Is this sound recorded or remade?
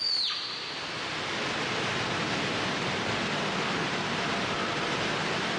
recorded